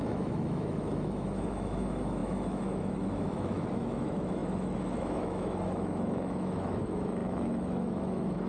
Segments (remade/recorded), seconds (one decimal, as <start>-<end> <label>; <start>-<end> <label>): 0.0-8.5 remade

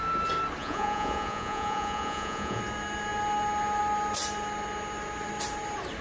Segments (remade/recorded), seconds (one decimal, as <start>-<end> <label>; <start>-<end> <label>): 0.0-0.6 recorded; 0.6-2.6 remade; 2.6-6.0 recorded

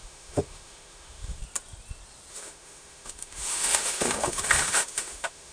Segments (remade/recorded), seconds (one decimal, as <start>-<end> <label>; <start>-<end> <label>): 0.0-1.4 remade; 1.4-2.3 recorded; 2.3-5.5 remade

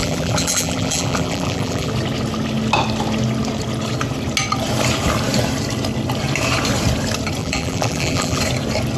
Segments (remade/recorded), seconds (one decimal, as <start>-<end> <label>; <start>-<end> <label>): 0.0-1.9 remade; 1.9-7.4 recorded; 7.4-8.4 remade; 8.4-9.0 recorded

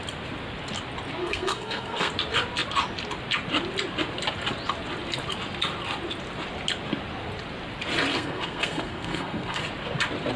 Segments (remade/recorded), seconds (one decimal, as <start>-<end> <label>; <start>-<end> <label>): 0.0-1.2 recorded; 1.2-2.1 remade; 2.1-8.1 recorded; 8.1-9.6 remade; 9.6-10.4 recorded

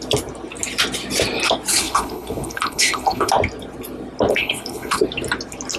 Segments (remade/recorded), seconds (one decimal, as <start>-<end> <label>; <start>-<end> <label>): 0.0-1.7 recorded; 1.7-3.3 remade; 3.3-4.3 recorded; 4.3-5.0 remade; 5.0-5.8 recorded

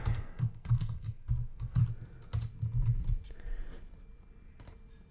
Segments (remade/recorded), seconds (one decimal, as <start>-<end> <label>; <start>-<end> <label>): 0.0-1.8 remade; 1.8-5.1 recorded